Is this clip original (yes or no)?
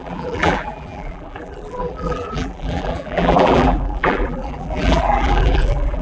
no